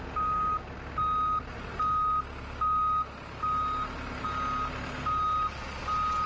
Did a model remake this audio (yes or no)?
no